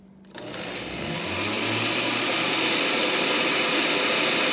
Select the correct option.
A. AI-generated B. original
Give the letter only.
B